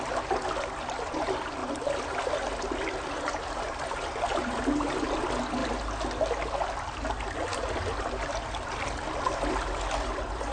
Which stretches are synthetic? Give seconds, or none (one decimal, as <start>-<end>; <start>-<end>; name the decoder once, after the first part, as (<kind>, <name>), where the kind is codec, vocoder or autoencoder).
none